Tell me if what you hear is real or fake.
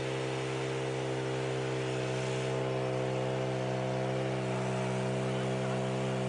real